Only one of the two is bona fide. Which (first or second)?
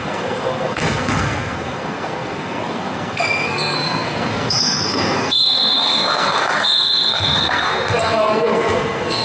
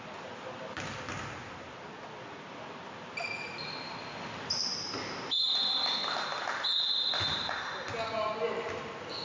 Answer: second